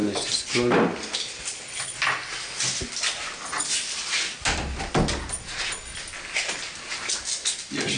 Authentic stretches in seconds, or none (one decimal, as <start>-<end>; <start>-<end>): 0.0-8.0